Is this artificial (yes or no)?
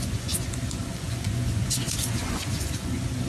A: yes